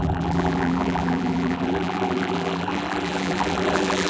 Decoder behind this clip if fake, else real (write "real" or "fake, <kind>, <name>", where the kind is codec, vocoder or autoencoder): fake, vocoder, BigVGAN v2